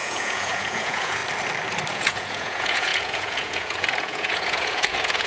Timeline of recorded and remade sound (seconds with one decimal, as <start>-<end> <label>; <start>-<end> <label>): 0.0-1.2 remade; 1.2-1.9 recorded; 1.9-5.3 remade